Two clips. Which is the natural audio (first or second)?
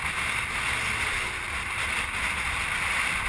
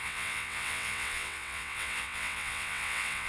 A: first